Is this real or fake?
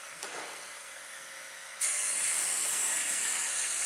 fake